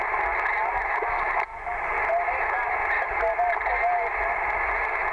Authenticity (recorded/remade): recorded